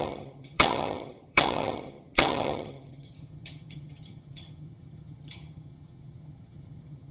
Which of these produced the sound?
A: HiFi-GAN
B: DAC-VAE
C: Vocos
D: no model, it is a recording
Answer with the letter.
A